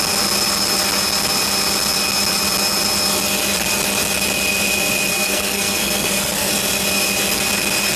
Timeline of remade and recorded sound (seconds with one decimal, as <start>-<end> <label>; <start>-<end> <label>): 0.0-5.1 recorded; 5.1-6.5 remade; 6.5-8.0 recorded